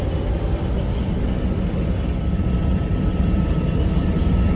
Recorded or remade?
recorded